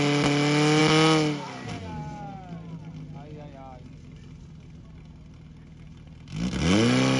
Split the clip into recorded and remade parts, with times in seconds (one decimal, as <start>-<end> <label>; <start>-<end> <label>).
0.0-7.2 recorded